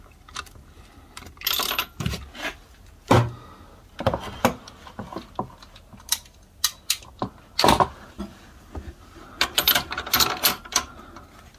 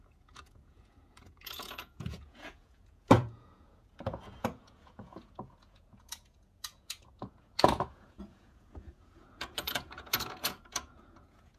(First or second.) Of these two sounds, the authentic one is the first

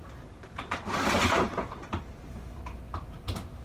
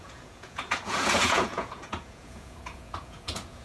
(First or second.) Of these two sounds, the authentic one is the first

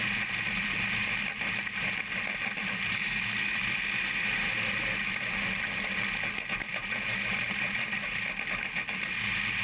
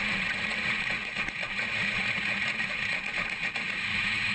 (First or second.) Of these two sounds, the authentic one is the first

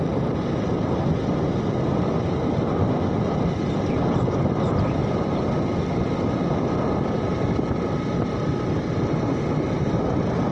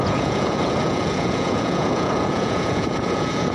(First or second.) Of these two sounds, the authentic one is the first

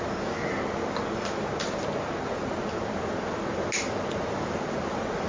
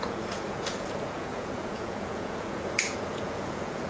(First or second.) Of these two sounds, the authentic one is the first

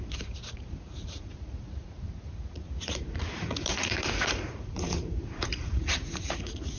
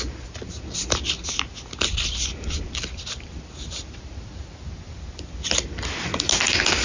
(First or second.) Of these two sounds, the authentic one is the second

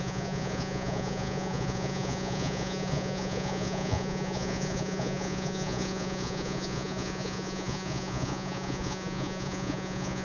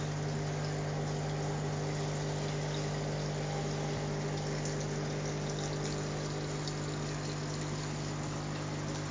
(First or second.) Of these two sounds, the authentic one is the second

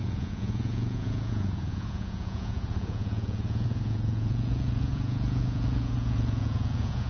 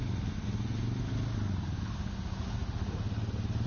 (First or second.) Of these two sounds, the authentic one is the second